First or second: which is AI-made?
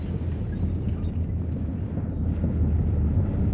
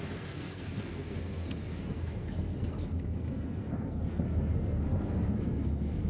second